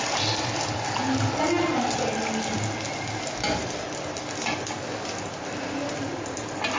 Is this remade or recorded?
recorded